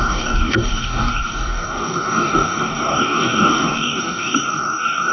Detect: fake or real fake